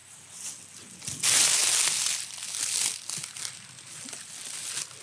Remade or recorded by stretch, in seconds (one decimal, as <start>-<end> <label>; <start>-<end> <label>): 0.0-5.0 recorded